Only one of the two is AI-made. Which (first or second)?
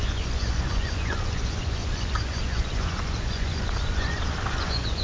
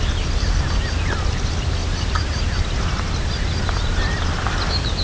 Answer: first